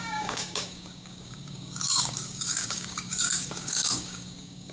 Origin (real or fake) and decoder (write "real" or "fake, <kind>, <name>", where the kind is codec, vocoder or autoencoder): fake, codec, DAC